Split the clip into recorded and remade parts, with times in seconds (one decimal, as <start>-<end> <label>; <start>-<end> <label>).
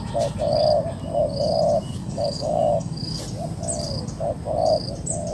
0.0-2.0 recorded; 2.0-3.2 remade; 3.2-5.3 recorded